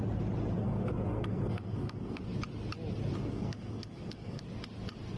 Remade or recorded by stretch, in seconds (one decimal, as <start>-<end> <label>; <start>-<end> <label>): 0.0-0.6 recorded; 0.6-2.2 remade; 2.2-3.2 recorded; 3.2-4.4 remade; 4.4-5.2 recorded